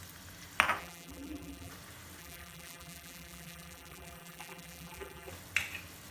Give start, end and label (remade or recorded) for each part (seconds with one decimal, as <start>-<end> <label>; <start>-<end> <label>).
0.0-0.8 recorded; 0.8-1.7 remade; 1.7-2.2 recorded; 2.2-5.3 remade; 5.3-6.1 recorded